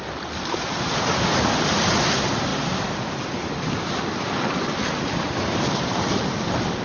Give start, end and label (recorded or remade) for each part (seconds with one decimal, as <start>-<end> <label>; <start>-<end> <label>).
0.0-2.5 recorded; 2.5-6.0 remade; 6.0-6.8 recorded

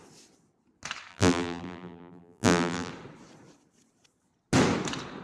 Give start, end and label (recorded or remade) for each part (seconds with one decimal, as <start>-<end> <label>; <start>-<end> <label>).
0.0-1.1 recorded; 1.1-2.9 remade; 2.9-5.2 recorded